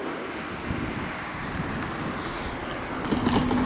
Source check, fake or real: real